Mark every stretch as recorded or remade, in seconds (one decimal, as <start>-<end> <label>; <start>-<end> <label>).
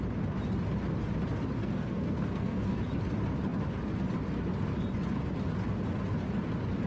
0.0-1.6 recorded; 1.6-2.8 remade; 2.8-6.9 recorded